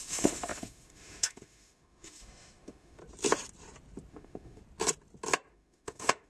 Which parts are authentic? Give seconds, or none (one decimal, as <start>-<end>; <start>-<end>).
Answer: 3.0-4.1; 4.6-5.5